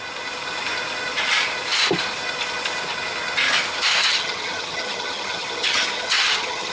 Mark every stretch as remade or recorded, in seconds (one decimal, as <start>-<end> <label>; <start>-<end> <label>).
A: 0.0-4.0 recorded; 4.0-6.7 remade